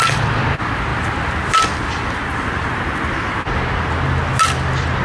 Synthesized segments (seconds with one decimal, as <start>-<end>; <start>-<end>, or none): 0.9-3.9